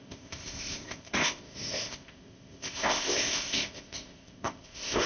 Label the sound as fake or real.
fake